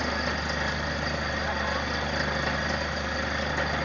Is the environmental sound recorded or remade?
recorded